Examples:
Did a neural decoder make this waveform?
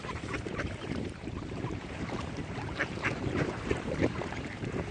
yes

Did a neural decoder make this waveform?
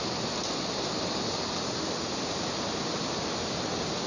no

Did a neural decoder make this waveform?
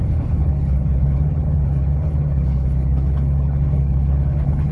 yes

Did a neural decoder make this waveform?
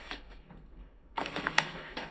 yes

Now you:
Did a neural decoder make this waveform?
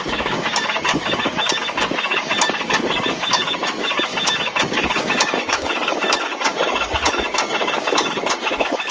yes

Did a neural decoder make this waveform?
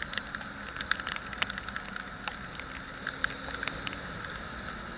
no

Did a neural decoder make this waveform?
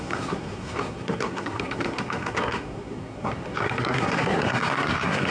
yes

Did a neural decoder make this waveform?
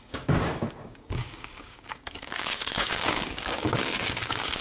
yes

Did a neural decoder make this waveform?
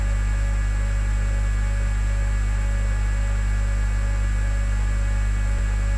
no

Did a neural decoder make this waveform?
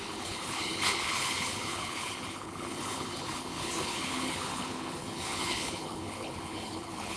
yes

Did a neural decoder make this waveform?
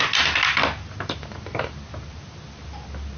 no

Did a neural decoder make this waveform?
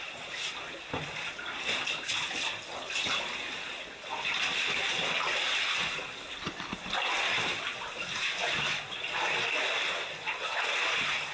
no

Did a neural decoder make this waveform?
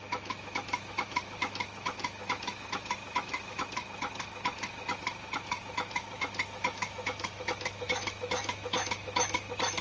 yes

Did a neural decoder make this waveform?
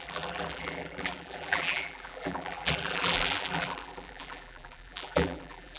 yes